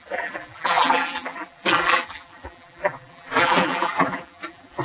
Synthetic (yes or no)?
yes